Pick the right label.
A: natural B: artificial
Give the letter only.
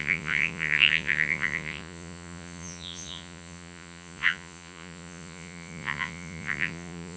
B